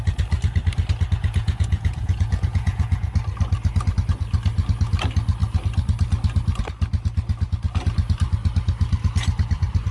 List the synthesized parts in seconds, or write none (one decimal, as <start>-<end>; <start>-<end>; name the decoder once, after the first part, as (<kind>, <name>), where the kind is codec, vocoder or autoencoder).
1.2-3.1 (vocoder, Vocos)